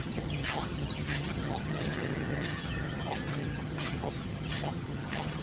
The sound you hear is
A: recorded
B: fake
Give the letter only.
B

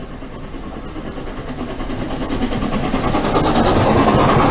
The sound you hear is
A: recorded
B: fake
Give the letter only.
A